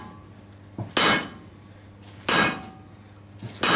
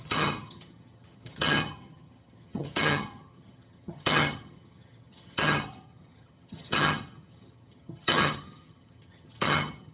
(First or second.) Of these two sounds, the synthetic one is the second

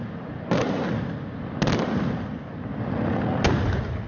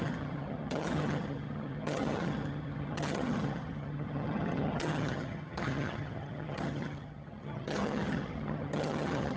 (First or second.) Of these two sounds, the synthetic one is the second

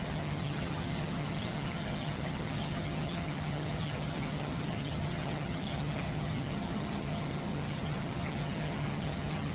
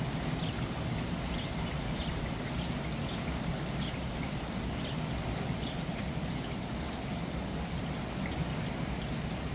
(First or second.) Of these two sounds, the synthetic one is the first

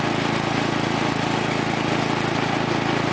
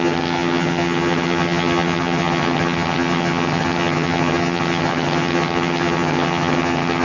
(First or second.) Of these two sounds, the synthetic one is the second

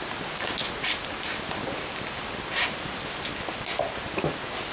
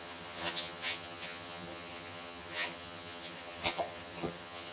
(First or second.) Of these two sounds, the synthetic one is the second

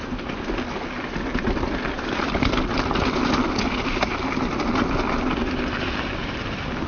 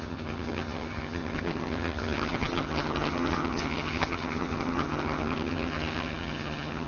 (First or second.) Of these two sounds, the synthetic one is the second